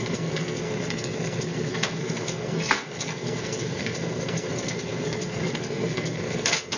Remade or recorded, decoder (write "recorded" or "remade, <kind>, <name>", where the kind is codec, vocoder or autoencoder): remade, codec, SNAC